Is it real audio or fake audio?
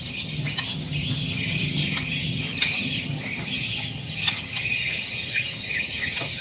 fake